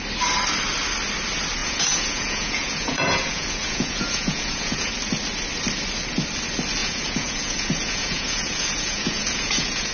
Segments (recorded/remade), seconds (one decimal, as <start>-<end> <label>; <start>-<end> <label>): 0.0-1.6 recorded; 1.6-4.9 remade; 4.9-6.8 recorded; 6.8-9.9 remade